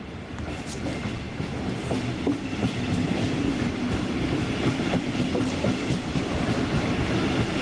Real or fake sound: real